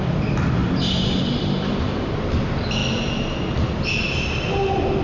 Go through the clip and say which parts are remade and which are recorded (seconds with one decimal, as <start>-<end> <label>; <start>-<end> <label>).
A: 0.0-0.6 recorded; 0.6-1.7 remade; 1.7-5.0 recorded